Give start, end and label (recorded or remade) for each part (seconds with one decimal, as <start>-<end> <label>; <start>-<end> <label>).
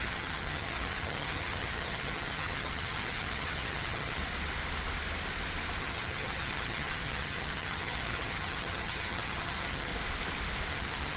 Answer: 0.0-4.2 remade; 4.2-5.8 recorded; 5.8-9.9 remade; 9.9-10.7 recorded; 10.7-11.2 remade